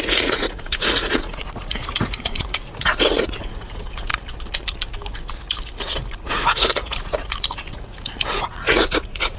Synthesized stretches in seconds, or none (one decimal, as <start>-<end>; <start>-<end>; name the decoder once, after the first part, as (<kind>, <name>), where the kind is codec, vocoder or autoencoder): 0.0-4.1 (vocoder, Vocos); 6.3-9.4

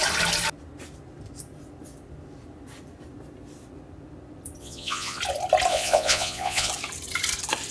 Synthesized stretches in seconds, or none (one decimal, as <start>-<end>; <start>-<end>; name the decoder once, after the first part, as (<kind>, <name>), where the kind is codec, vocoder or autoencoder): 4.6-5.2 (vocoder, Vocos); 5.7-6.7

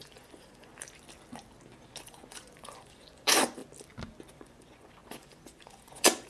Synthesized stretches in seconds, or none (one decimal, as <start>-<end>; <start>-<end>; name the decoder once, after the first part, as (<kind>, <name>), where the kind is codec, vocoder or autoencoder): 0.0-0.7 (vocoder, Vocos); 2.0-3.6; 4.3-6.3

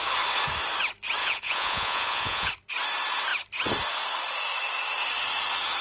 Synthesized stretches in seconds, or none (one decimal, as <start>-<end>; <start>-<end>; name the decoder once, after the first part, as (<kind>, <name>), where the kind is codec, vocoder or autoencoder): 1.2-2.5 (vocoder, Vocos)

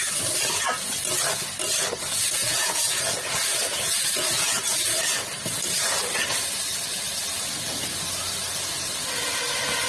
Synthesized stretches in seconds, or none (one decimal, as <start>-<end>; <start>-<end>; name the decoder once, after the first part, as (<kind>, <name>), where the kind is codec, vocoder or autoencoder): 2.4-3.3 (vocoder, Vocos)

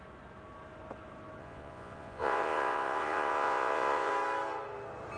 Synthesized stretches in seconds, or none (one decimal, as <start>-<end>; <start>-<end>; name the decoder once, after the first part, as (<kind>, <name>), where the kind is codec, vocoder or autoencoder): 1.4-4.1 (vocoder, Vocos)

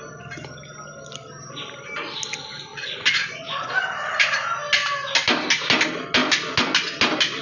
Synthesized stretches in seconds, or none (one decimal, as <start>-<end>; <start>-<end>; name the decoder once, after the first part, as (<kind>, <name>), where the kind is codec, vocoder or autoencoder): 2.7-3.8 (vocoder, Vocos)

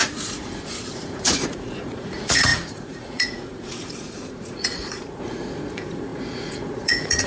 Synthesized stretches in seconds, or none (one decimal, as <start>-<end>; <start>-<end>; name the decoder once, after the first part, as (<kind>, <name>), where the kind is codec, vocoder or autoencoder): 0.0-7.3 (vocoder, Vocos)